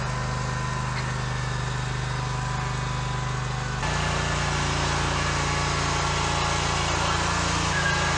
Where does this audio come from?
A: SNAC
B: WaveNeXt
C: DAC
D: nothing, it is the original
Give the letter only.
D